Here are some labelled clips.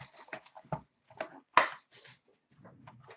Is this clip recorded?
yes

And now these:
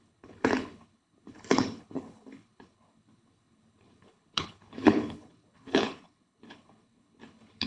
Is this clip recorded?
no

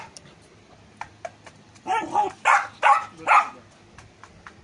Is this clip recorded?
yes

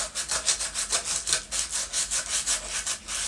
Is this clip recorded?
yes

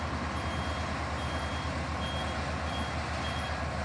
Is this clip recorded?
yes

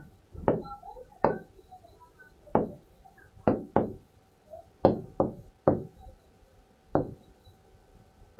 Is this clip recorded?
yes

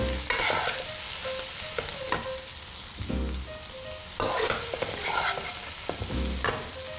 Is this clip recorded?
yes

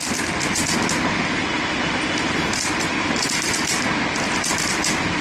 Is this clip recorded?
yes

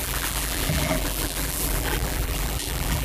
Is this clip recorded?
no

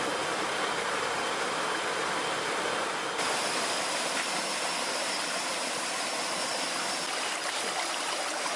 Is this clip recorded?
yes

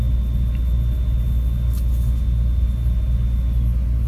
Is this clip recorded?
yes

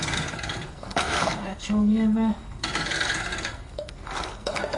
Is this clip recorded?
no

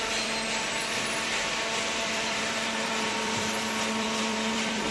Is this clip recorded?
no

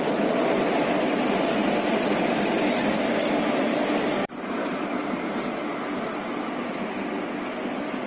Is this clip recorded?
yes